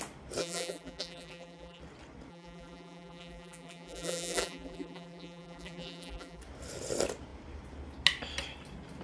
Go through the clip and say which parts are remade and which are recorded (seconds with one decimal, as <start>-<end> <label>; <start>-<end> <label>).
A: 0.0-0.4 recorded; 0.4-1.8 remade; 1.8-2.3 recorded; 2.3-6.4 remade; 6.4-9.0 recorded